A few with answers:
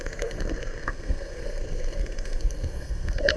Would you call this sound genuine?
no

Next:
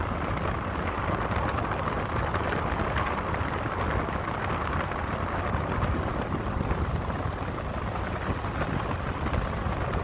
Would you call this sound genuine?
yes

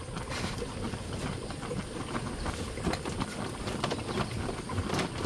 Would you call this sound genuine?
yes